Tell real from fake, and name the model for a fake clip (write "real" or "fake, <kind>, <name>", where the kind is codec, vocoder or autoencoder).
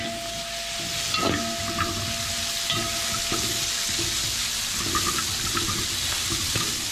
real